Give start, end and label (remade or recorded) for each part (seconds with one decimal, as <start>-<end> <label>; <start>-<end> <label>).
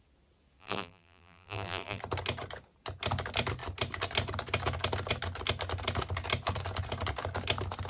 0.0-0.6 recorded; 0.6-2.0 remade; 2.0-7.9 recorded